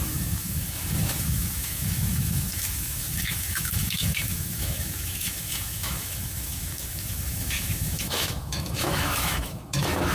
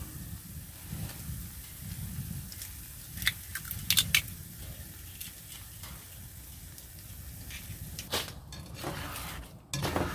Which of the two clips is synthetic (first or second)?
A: first